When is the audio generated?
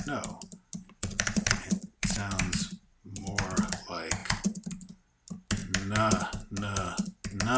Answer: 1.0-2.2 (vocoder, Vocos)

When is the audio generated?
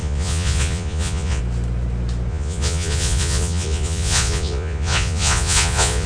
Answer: 0.0-1.4 (vocoder, Vocos); 2.3-6.1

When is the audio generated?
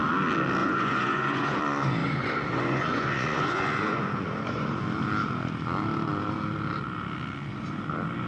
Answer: 0.6-1.6 (vocoder, Vocos); 2.0-4.8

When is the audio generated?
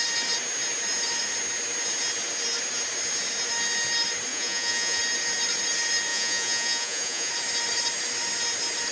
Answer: 4.3-5.0 (vocoder, Vocos); 6.1-7.3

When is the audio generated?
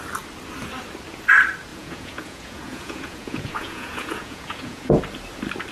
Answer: 1.7-5.0 (vocoder, Vocos)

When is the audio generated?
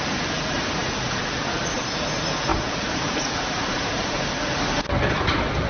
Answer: none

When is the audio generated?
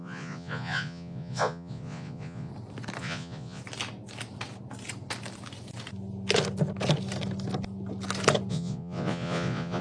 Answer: 0.0-2.5 (vocoder, Vocos); 3.0-3.6; 8.5-9.8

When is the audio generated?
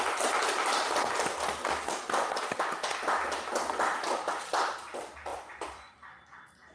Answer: 5.3-5.9 (vocoder, Vocos)